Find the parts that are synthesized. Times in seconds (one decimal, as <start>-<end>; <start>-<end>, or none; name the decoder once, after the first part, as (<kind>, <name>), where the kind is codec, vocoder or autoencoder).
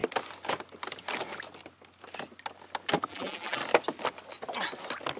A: 3.1-3.6 (vocoder, BigVGAN v2)